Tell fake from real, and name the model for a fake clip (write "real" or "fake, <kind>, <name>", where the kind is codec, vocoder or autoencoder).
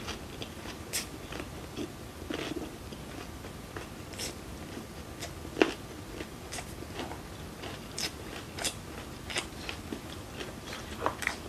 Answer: real